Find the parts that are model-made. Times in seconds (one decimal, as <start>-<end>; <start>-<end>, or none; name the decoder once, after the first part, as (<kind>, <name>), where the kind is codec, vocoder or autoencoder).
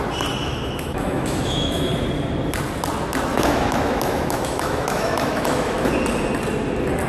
0.4-1.9 (autoencoder, DAC-VAE); 3.3-5.9